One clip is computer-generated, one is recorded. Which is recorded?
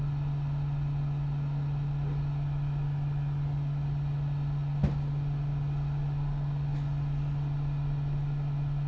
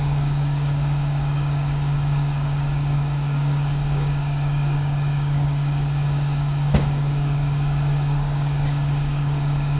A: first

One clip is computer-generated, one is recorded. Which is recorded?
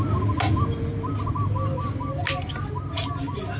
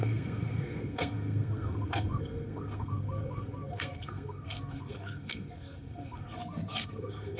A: first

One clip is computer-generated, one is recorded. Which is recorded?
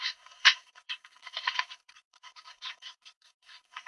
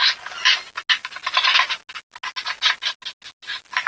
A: second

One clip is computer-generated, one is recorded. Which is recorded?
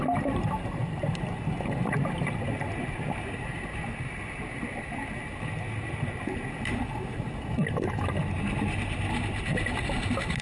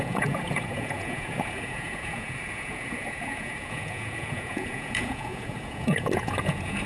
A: first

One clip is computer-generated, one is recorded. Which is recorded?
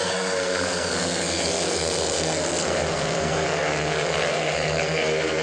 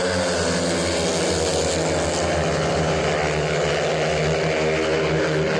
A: second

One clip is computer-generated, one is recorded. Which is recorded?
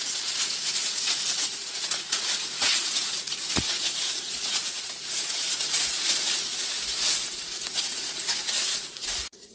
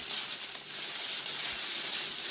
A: second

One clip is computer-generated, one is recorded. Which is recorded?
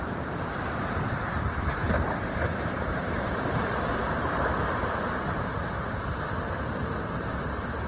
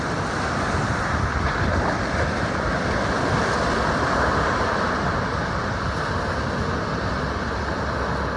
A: second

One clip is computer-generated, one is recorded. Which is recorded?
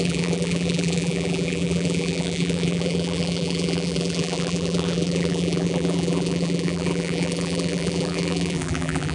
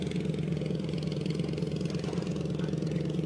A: second